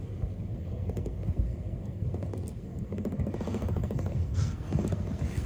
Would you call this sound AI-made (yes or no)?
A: yes